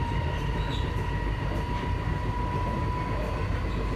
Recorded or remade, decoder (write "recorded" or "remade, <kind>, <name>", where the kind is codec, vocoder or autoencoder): recorded